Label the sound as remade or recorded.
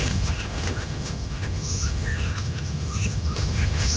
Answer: remade